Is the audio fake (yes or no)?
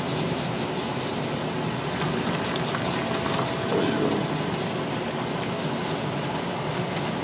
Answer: no